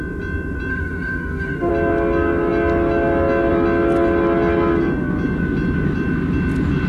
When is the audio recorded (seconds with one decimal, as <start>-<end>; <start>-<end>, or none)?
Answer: 0.0-0.7; 1.7-6.9